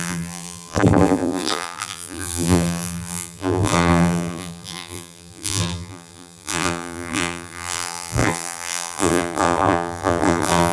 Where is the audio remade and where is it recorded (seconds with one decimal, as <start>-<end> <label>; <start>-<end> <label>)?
0.0-10.7 remade